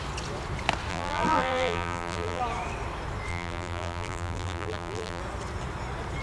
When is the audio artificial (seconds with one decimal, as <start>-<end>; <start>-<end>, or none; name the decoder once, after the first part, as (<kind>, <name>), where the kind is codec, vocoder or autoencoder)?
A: 0.9-2.4 (vocoder, BigVGAN v2); 3.3-5.2